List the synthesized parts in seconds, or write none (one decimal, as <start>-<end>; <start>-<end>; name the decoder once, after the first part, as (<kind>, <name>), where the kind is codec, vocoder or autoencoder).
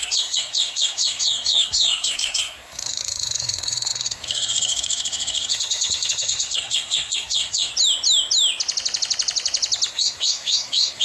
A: 0.0-7.7 (codec, SNAC); 9.9-11.0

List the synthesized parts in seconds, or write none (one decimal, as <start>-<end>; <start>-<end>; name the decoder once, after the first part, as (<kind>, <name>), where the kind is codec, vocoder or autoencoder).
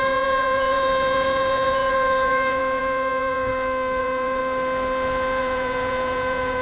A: 0.0-3.5 (vocoder, Vocos); 4.0-4.4; 5.4-6.6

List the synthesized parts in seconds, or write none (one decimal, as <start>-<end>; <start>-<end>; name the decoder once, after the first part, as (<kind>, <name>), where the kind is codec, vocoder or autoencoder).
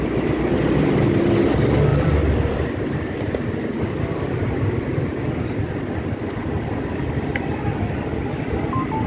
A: 1.9-5.2 (vocoder, BigVGAN v2)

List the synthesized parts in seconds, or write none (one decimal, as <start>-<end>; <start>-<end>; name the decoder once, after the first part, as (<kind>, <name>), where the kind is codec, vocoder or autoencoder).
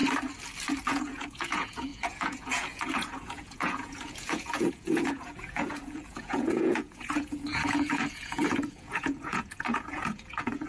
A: 0.9-10.7 (vocoder, Vocos)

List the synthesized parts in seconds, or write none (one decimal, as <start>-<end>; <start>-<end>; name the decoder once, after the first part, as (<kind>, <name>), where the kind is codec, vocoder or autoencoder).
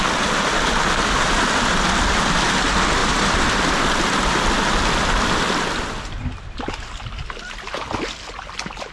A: 3.0-3.5 (vocoder, BigVGAN v2)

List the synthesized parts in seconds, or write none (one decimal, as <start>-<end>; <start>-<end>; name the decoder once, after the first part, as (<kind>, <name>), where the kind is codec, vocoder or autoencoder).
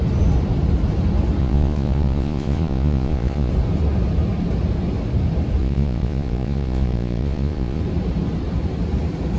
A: 1.4-3.5 (vocoder, Vocos); 5.6-7.8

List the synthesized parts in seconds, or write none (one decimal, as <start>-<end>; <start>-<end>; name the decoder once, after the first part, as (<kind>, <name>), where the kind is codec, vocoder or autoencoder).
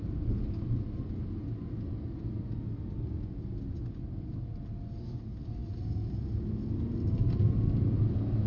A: none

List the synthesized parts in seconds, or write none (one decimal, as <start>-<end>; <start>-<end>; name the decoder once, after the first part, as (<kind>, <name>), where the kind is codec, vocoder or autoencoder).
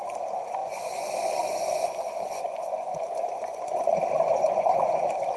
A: 0.6-3.8 (vocoder, Vocos); 4.3-5.0